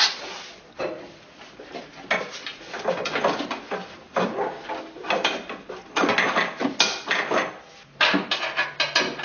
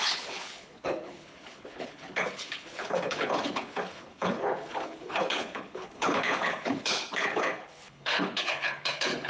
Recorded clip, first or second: first